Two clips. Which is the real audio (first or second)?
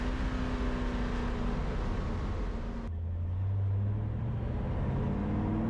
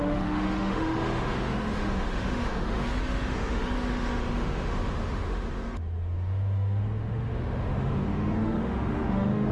first